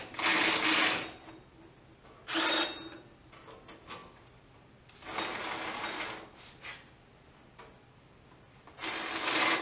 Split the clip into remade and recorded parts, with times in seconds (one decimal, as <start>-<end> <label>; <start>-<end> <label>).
0.0-9.6 recorded